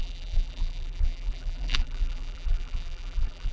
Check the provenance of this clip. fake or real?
fake